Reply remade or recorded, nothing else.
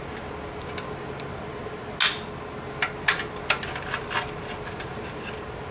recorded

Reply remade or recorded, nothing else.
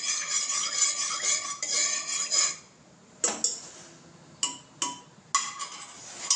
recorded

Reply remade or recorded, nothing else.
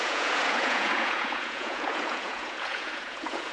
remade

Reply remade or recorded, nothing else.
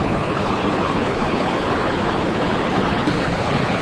remade